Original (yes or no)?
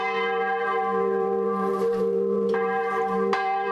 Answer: no